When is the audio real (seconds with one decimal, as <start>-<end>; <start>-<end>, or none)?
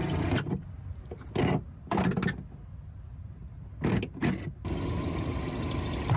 0.0-6.2